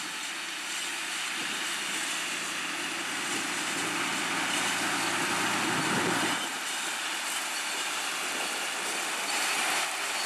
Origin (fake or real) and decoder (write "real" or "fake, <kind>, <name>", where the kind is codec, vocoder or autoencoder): real